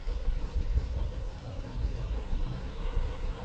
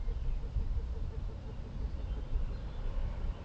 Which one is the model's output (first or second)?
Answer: first